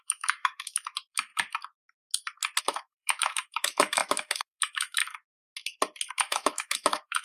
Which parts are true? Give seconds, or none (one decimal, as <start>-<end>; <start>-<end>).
1.3-2.6; 5.0-6.1